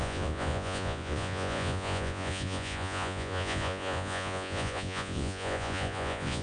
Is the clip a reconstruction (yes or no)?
yes